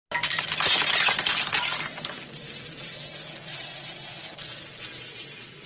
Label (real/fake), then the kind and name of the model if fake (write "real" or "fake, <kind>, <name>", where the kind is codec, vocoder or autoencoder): real